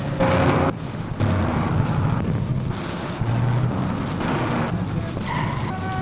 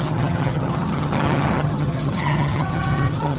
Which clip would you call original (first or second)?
first